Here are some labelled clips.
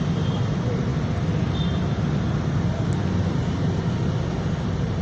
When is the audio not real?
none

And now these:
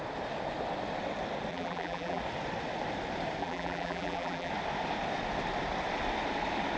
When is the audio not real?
1.5-2.2 (vocoder, BigVGAN v2); 3.4-4.5